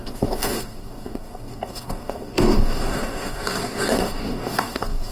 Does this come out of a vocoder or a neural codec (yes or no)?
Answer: yes